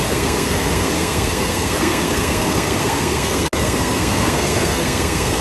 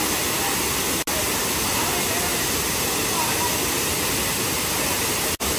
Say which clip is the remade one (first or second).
first